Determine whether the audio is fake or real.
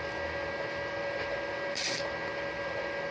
real